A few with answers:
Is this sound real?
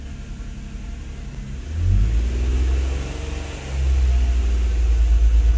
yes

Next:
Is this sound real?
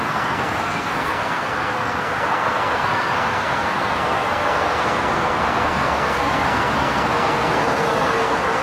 no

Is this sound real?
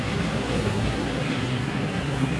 no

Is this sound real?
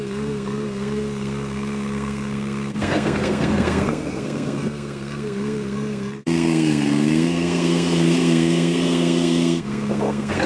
no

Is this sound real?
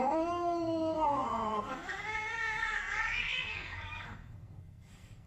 no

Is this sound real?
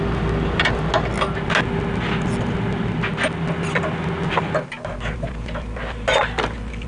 yes